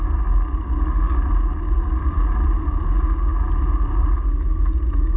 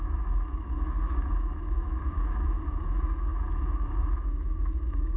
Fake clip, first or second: second